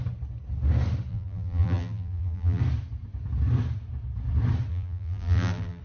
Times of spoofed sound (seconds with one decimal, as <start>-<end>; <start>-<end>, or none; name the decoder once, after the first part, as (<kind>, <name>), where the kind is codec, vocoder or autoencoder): 1.1-2.6 (vocoder, BigVGAN v2); 4.7-5.8